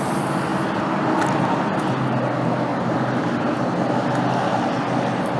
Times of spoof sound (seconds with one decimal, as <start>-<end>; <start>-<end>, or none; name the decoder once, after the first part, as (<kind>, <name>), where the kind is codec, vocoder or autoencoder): 2.7-3.4 (vocoder, BigVGAN v2)